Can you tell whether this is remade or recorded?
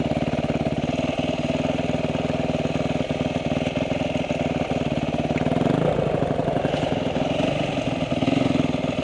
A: recorded